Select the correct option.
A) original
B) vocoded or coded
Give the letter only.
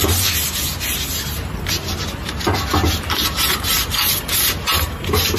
B